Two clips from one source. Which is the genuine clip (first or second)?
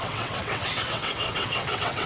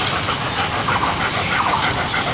second